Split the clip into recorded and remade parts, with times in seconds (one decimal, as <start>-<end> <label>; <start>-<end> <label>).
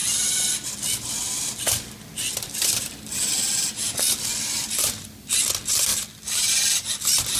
0.0-7.4 recorded